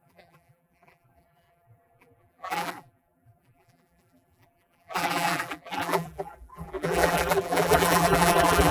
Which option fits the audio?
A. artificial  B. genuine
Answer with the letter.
A